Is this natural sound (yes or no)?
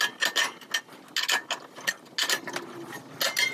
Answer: yes